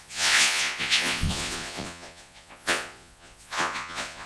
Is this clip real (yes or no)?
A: no